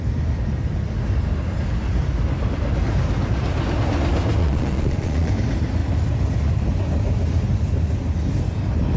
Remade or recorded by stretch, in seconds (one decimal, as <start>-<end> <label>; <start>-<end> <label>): 0.0-4.4 recorded; 4.4-5.3 remade; 5.3-9.0 recorded